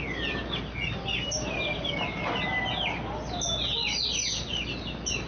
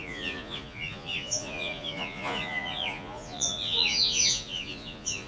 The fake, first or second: second